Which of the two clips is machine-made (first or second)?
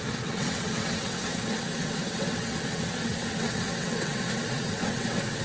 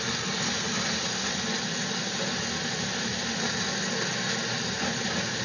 first